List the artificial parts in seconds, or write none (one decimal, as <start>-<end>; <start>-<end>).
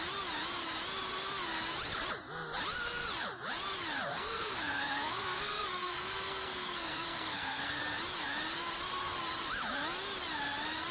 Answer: 4.1-7.8